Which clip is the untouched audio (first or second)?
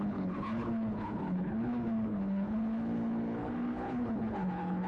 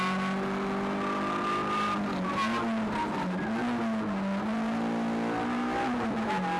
second